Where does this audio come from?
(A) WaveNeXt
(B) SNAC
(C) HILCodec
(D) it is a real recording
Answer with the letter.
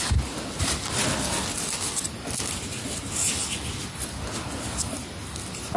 D